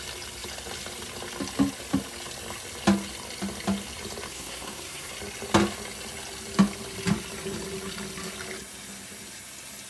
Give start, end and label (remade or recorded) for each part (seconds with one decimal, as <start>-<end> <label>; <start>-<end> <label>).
0.0-4.3 recorded; 4.3-5.1 remade; 5.1-9.9 recorded